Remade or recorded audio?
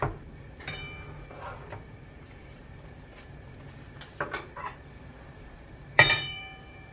remade